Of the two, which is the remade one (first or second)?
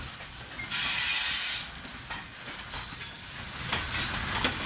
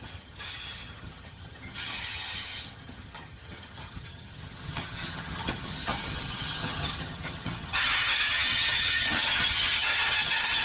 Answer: second